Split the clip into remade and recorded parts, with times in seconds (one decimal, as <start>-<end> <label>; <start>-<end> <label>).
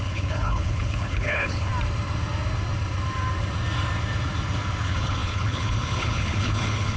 0.0-1.7 remade; 1.7-4.8 recorded; 4.8-7.0 remade